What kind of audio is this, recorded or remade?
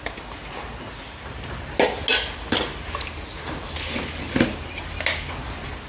recorded